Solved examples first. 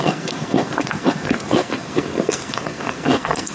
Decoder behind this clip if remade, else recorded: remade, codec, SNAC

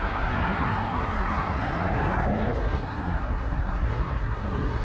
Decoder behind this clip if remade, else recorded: remade, codec, SNAC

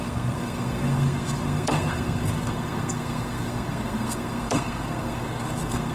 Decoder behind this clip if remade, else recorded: remade, codec, SNAC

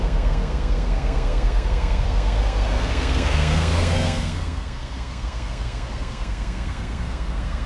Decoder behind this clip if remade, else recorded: remade, codec, SNAC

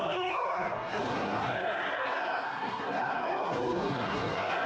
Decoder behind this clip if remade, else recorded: remade, codec, SNAC